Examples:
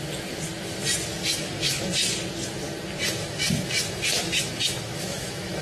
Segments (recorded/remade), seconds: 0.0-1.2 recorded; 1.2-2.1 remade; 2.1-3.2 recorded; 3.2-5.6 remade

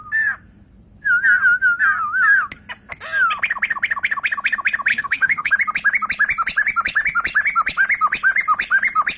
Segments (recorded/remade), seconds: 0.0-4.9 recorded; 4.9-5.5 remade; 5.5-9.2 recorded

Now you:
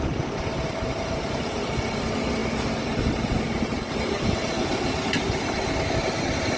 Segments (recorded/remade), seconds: 0.0-6.6 recorded

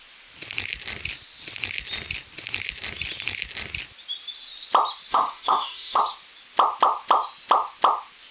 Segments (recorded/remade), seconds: 0.0-5.1 recorded; 5.1-6.0 remade; 6.0-8.3 recorded